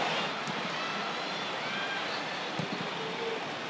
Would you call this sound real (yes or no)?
yes